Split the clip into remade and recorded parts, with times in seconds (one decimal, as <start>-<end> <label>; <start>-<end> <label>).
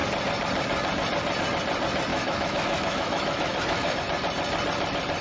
0.0-2.1 recorded; 2.1-4.0 remade; 4.0-5.2 recorded